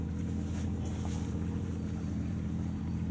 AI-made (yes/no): yes